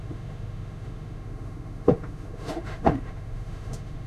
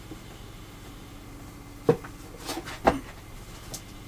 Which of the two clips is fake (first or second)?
first